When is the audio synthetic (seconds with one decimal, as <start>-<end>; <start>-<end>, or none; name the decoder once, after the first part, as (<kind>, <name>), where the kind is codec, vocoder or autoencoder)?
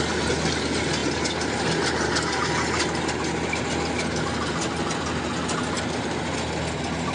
none